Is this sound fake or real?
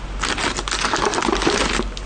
real